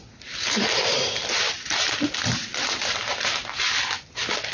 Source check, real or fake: real